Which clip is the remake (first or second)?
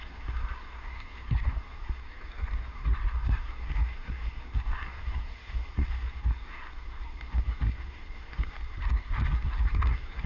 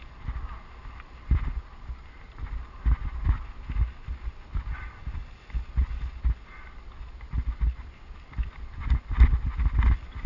first